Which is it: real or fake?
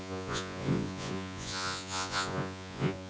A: fake